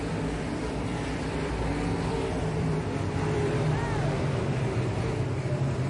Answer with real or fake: fake